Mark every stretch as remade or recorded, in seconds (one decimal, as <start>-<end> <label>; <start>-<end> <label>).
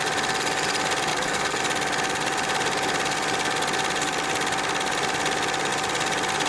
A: 0.0-1.1 recorded; 1.1-1.6 remade; 1.6-6.5 recorded